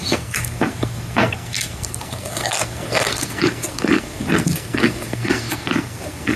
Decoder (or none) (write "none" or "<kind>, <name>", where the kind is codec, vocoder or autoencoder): codec, SNAC